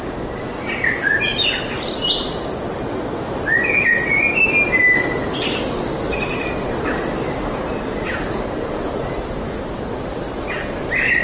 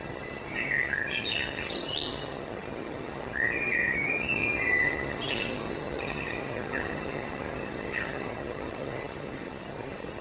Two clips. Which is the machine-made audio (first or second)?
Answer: second